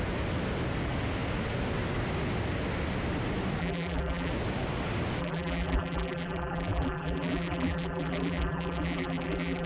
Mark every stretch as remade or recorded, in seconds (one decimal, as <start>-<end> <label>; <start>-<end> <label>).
0.0-3.6 recorded; 3.6-4.3 remade; 4.3-5.2 recorded; 5.2-9.7 remade